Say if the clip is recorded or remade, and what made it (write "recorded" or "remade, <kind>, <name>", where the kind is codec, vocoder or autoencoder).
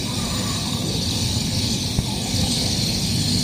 remade, codec, DAC